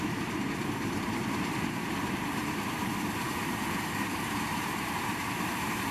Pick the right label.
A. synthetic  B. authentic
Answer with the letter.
A